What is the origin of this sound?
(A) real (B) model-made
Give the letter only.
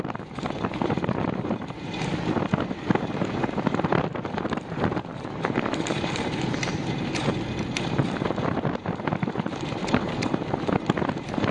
B